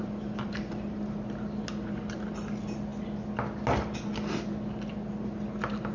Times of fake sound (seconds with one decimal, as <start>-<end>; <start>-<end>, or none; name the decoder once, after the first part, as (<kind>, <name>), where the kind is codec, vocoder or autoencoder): none

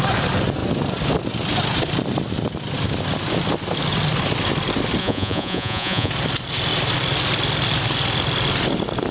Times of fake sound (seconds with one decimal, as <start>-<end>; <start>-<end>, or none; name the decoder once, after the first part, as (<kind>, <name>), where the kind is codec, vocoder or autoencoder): 5.0-6.1 (vocoder, Vocos)

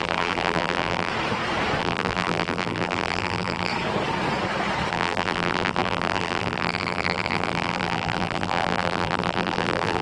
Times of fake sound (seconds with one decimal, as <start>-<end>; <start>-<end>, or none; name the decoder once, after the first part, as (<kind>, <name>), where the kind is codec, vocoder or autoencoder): 0.0-1.1 (vocoder, BigVGAN v2); 1.8-3.7; 4.9-10.0